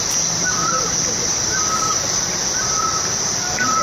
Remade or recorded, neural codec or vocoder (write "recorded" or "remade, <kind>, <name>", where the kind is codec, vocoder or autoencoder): recorded